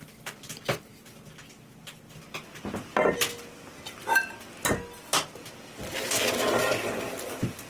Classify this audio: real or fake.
real